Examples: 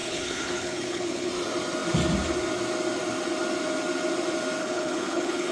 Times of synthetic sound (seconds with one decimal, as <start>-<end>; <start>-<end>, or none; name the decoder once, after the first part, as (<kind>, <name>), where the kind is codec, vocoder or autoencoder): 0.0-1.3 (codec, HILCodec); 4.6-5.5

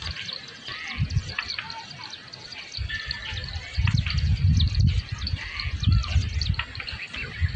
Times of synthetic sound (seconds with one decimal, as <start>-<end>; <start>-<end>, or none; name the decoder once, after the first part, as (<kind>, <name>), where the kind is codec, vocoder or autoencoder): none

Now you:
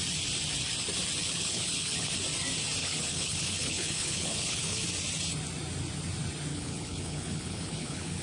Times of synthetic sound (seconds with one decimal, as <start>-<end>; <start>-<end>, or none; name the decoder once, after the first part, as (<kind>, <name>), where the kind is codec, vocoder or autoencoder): 1.2-2.1 (codec, HILCodec); 2.8-4.8; 6.5-8.2